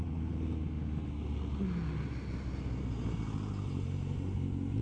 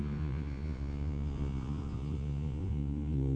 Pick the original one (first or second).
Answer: first